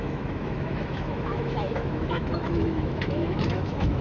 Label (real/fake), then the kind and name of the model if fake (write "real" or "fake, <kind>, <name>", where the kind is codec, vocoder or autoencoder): fake, autoencoder, DAC-VAE